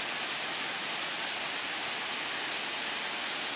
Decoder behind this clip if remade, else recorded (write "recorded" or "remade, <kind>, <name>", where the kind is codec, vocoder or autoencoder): recorded